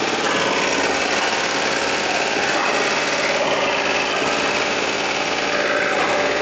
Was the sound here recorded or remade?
recorded